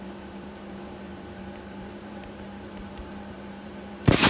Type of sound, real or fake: fake